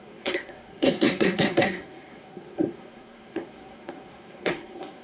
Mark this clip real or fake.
fake